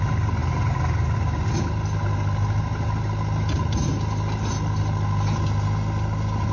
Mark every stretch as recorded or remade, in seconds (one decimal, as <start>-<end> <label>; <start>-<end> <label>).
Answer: 0.0-6.5 recorded